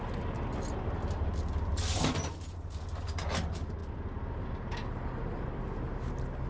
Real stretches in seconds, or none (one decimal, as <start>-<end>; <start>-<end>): 0.0-6.5